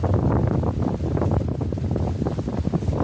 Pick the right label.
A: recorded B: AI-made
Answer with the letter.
A